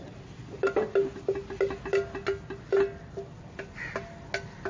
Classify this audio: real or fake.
real